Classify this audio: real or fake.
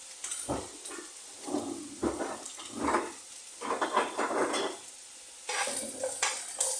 real